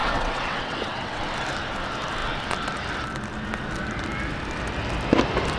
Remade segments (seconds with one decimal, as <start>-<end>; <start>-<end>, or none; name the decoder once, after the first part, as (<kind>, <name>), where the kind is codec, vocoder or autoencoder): 0.0-1.2 (vocoder, WaveNeXt)